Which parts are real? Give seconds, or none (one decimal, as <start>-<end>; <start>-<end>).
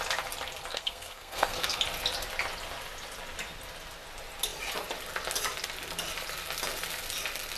0.0-0.7; 1.8-7.6